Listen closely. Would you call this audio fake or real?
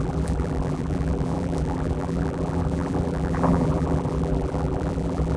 fake